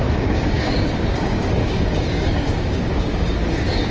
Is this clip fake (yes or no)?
yes